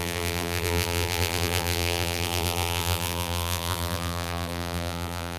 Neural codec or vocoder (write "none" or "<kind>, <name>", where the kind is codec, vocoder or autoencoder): vocoder, BigVGAN v2